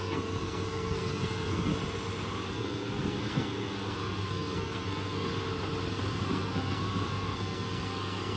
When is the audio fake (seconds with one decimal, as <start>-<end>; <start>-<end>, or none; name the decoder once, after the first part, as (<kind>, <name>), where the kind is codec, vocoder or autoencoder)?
0.0-1.7 (codec, SNAC); 2.5-5.3; 5.9-8.4